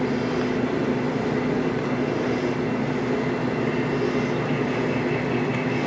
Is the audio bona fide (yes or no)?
yes